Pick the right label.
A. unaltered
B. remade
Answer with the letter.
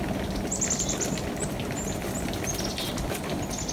A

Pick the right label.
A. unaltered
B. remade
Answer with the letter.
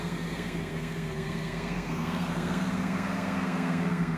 B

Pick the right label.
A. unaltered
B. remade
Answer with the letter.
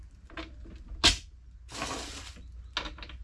A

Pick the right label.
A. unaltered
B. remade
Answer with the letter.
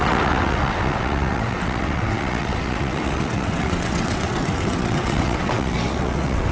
B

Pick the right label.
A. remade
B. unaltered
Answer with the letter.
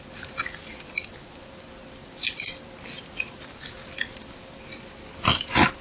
B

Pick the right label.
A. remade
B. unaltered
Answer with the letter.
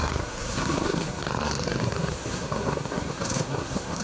A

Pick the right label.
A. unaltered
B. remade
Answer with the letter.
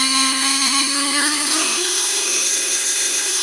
B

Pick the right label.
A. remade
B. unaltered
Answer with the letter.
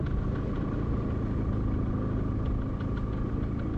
B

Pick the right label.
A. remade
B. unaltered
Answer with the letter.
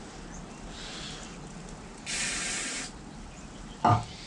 B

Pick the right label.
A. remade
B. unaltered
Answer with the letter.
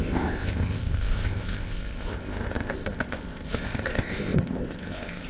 A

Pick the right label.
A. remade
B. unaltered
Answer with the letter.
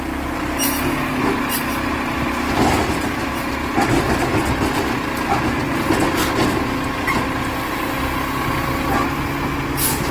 B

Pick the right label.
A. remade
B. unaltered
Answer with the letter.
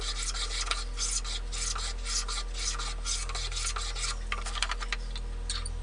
B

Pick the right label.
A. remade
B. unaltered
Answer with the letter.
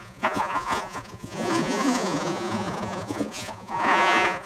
A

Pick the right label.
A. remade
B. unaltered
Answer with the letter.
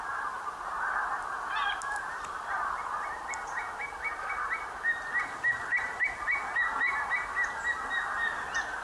B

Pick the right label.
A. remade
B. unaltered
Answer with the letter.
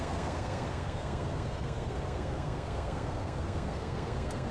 A